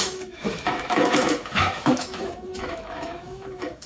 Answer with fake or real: fake